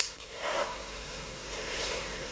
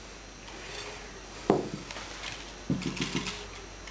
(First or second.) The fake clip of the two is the first